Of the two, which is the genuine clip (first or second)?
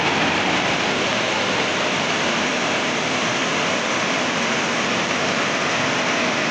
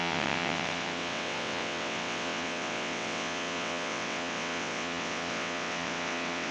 first